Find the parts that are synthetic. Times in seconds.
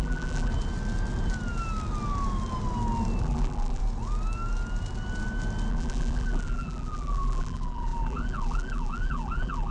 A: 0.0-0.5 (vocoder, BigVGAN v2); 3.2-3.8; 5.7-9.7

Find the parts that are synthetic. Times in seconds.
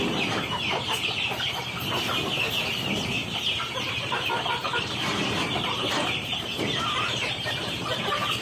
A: 4.6-7.9 (vocoder, BigVGAN v2)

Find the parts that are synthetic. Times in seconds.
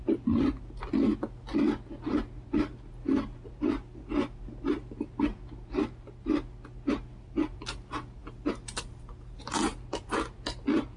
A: 8.2-9.5 (vocoder, BigVGAN v2)